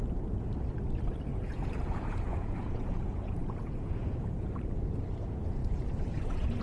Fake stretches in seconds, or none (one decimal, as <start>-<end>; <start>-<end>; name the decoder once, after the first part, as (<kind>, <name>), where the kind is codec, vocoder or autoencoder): 1.3-4.5 (vocoder, Vocos); 5.6-6.6